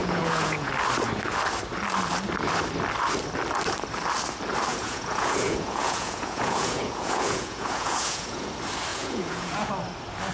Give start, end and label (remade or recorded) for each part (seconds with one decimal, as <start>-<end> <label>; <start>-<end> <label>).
0.0-0.7 remade; 0.7-4.7 recorded; 4.7-8.5 remade; 8.5-8.9 recorded; 8.9-9.7 remade; 9.7-10.3 recorded